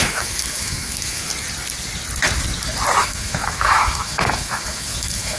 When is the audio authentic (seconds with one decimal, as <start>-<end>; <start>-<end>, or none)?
1.3-3.0